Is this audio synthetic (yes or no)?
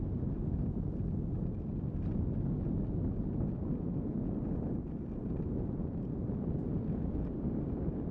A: no